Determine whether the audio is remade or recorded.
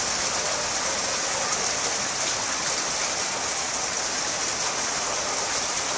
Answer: recorded